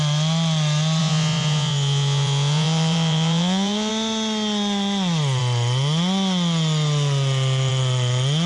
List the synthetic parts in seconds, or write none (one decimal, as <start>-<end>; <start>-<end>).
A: 1.0-3.9